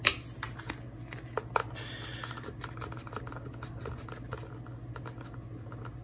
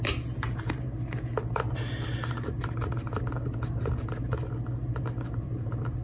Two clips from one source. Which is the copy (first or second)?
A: second